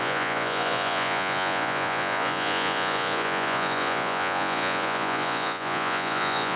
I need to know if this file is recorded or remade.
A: remade